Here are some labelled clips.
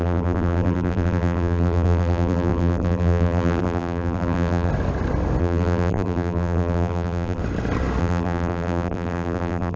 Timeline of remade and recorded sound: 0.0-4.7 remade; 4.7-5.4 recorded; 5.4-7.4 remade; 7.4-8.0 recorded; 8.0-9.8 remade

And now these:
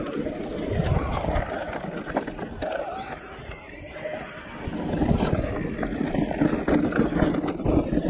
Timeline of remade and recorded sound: 0.0-0.5 recorded; 0.5-1.4 remade; 1.4-8.1 recorded